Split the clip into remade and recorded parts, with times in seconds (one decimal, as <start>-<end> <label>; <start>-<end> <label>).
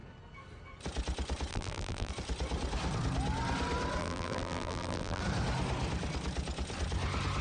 0.0-1.5 recorded; 1.5-2.1 remade; 2.1-4.0 recorded; 4.0-5.2 remade; 5.2-7.4 recorded